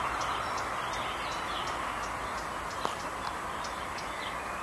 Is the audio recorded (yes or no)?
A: yes